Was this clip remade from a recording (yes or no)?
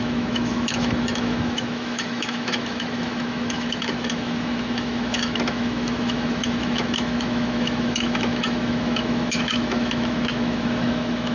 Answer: yes